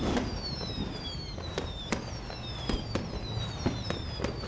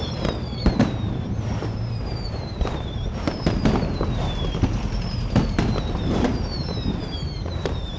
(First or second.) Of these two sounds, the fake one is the second